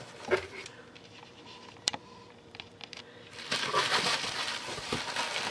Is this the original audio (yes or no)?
no